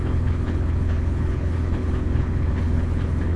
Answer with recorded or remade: remade